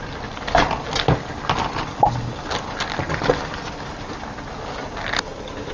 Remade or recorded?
recorded